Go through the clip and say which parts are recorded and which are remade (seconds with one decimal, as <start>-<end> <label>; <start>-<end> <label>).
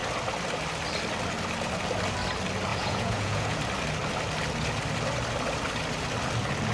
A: 0.0-2.7 recorded; 2.7-3.6 remade; 3.6-6.7 recorded